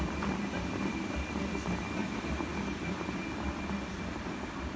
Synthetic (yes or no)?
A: yes